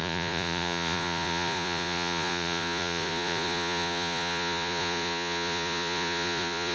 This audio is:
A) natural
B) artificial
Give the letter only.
B